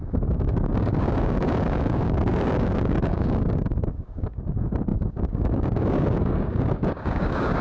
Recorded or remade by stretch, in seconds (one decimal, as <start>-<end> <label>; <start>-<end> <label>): 0.0-7.6 remade